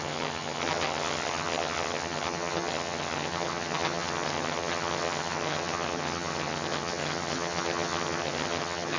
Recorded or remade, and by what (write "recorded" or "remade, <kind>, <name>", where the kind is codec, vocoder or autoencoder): remade, vocoder, HiFi-GAN